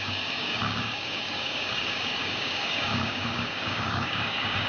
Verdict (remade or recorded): remade